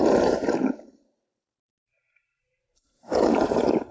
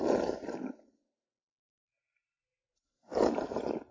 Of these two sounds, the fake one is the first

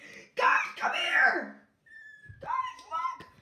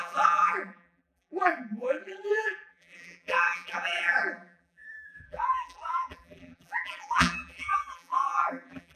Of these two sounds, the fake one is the second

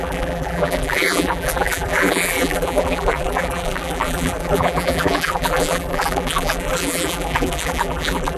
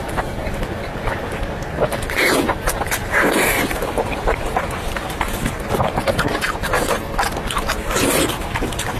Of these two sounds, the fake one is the first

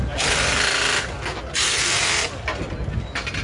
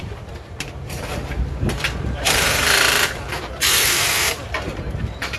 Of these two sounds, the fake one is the second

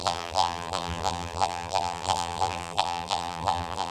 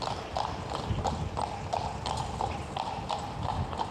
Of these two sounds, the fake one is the first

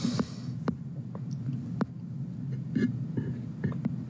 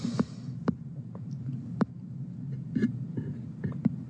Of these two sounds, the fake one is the second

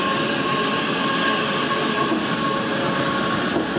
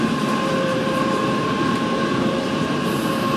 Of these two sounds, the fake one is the second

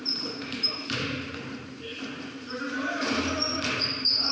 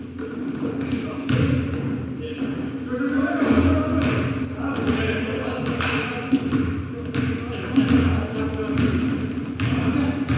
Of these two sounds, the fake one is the first